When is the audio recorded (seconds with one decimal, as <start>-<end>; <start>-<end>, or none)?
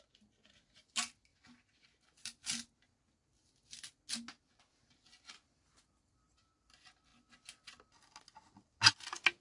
0.0-9.4